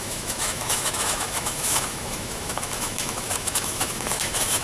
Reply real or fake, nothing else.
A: fake